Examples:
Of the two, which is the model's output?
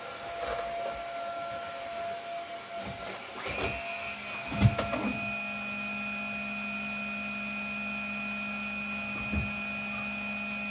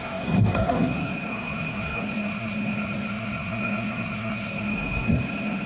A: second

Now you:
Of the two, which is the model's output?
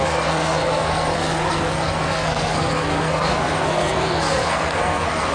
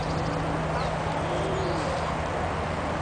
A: first